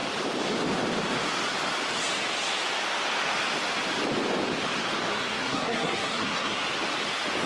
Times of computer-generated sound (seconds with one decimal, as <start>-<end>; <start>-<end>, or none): 5.1-6.6